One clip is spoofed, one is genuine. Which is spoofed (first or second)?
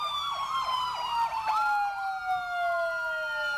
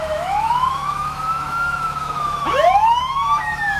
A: second